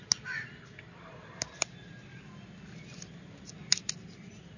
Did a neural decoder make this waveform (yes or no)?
no